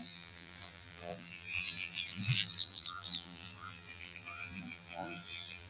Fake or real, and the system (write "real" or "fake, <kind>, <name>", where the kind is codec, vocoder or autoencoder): fake, vocoder, BigVGAN v2